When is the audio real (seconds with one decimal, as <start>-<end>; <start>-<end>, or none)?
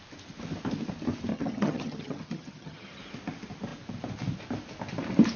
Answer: 0.0-1.3; 3.0-5.4